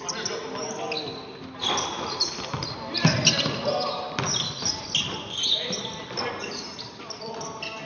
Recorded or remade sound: recorded